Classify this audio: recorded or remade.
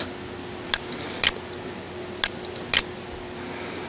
recorded